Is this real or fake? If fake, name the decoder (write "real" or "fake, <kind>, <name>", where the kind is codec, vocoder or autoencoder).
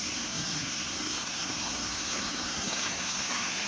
fake, codec, SNAC